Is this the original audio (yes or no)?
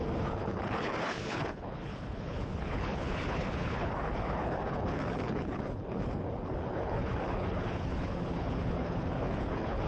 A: no